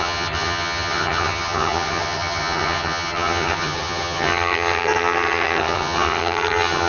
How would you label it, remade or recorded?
remade